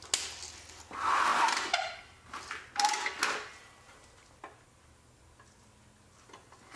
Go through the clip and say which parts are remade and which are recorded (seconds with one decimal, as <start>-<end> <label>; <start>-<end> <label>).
0.0-6.8 recorded